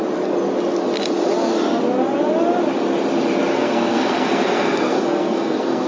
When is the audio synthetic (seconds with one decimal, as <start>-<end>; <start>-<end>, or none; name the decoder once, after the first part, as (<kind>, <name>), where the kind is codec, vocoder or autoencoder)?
3.5-5.9 (codec, SNAC)